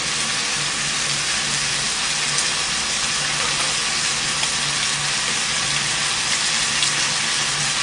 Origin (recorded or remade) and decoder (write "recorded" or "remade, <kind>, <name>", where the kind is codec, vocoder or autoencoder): recorded